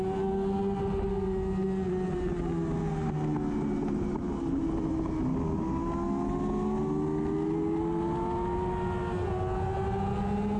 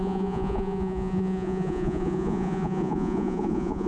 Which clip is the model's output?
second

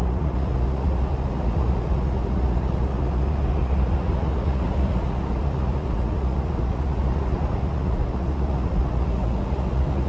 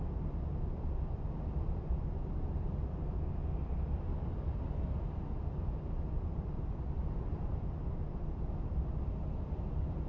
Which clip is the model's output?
first